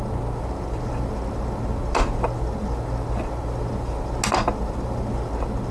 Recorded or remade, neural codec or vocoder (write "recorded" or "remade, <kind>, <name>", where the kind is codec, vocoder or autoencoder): recorded